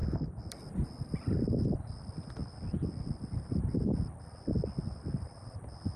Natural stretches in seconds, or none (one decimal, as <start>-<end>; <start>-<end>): 0.0-6.0

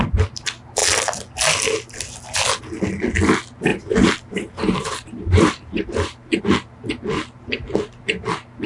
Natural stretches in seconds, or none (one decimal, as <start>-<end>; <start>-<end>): 0.0-3.7; 6.4-8.7

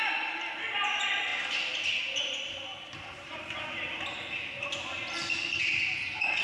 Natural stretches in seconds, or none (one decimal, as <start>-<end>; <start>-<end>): 0.0-6.4

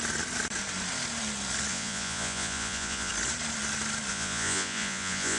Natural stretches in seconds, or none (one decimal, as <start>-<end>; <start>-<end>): 0.0-1.7; 3.1-4.1

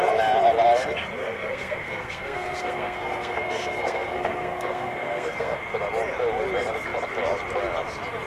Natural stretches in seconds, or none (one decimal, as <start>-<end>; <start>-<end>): 0.0-1.2; 5.6-8.3